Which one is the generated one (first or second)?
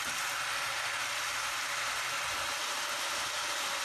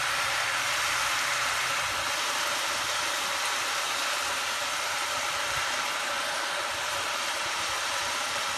second